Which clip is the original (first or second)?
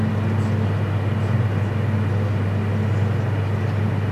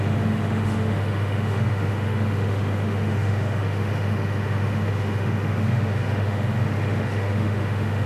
first